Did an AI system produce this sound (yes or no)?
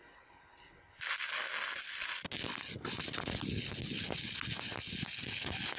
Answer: no